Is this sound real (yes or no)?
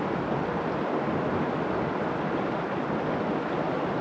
yes